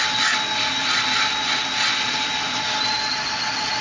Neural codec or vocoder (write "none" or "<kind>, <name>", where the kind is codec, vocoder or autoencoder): none